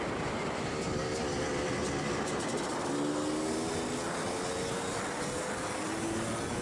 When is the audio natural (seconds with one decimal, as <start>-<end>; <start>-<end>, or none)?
0.0-6.6